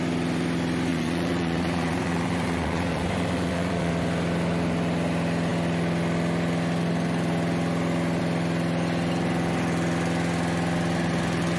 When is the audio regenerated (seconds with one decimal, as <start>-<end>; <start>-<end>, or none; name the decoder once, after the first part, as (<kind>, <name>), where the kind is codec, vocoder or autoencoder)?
0.9-3.9 (vocoder, Vocos)

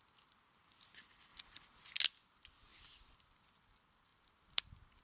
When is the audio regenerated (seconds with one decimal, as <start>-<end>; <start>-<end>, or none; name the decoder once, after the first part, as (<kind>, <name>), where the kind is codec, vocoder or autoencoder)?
2.7-3.5 (vocoder, BigVGAN v2)